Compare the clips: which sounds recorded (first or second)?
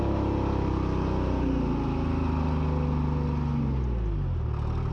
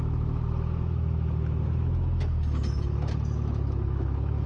first